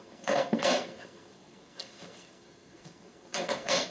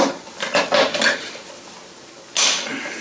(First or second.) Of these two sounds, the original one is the second